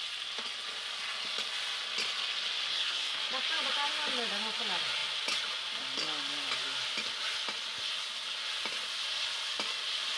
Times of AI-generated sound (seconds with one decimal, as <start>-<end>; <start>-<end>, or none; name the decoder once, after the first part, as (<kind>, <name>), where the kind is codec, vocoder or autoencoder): 2.7-3.2 (codec, SNAC)